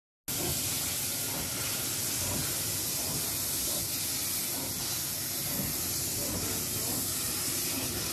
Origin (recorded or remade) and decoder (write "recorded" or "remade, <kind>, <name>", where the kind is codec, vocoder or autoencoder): recorded